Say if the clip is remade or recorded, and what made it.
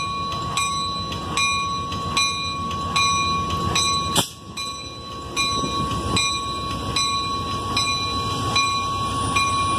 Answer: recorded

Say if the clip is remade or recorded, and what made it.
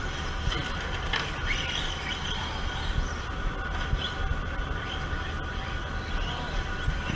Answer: recorded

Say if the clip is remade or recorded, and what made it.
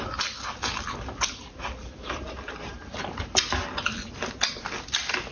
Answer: recorded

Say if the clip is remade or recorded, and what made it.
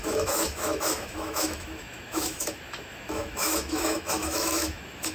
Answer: remade, autoencoder, DAC-VAE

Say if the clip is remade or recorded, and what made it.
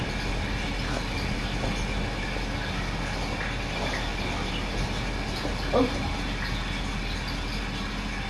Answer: recorded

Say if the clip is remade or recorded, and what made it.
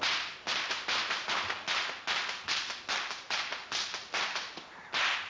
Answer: recorded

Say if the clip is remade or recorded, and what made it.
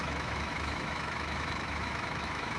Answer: remade, autoencoder, DAC-VAE